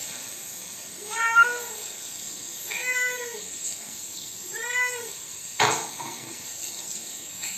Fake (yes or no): yes